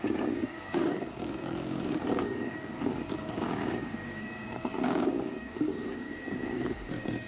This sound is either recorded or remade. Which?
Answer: remade